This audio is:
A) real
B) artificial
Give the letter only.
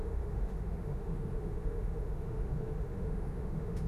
B